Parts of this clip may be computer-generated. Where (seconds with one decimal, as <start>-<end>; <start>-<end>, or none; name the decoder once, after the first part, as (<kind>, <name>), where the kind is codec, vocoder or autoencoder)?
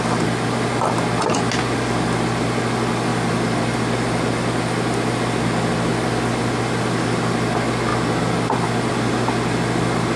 none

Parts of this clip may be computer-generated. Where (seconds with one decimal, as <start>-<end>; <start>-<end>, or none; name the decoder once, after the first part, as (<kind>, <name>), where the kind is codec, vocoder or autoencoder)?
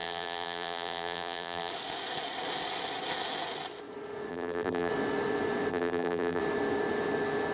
0.0-1.7 (vocoder, BigVGAN v2); 4.3-4.9; 5.7-6.4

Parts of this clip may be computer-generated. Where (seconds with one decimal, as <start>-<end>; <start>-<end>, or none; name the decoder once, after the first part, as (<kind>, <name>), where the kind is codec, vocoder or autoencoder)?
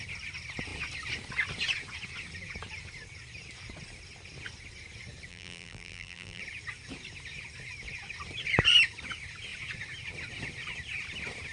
5.3-6.4 (vocoder, BigVGAN v2)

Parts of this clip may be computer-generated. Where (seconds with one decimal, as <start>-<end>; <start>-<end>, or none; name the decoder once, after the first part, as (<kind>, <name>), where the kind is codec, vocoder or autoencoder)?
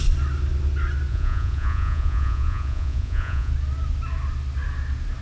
1.1-3.5 (vocoder, Vocos)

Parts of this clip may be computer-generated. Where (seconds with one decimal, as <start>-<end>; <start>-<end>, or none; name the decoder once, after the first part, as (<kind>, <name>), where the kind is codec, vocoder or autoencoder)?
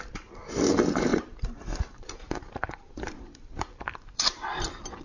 1.1-3.8 (vocoder, BigVGAN v2)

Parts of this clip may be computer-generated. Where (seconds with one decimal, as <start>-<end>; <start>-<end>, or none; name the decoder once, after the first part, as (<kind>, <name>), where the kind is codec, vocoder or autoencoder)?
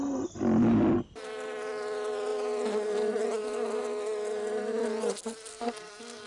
5.5-6.3 (codec, SNAC)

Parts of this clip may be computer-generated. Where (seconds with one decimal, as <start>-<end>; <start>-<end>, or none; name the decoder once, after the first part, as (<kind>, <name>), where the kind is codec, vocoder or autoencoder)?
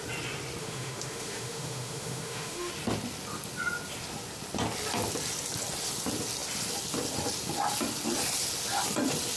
0.6-2.7 (autoencoder, DAC-VAE)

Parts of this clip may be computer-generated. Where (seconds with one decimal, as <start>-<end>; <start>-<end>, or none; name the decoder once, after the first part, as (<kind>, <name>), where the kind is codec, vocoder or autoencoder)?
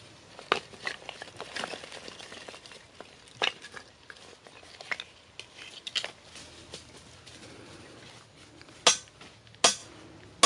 none